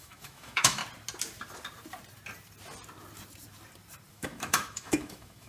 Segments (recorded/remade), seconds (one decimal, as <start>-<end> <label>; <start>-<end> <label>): 0.0-0.8 remade; 0.8-4.1 recorded; 4.1-5.5 remade